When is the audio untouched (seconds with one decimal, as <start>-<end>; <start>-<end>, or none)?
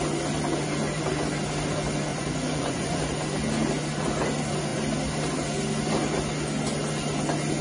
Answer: 0.0-2.1; 3.0-7.6